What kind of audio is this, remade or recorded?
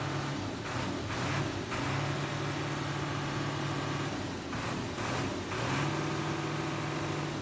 recorded